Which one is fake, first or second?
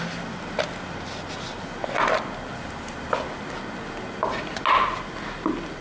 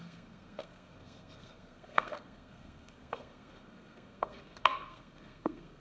second